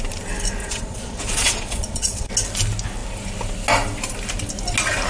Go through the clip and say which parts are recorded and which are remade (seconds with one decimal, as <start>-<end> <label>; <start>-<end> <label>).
0.0-0.6 recorded; 0.6-2.3 remade; 2.3-5.1 recorded